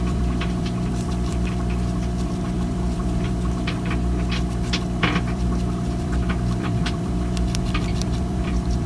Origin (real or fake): fake